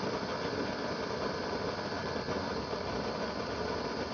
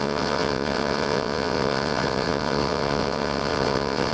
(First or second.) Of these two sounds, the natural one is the first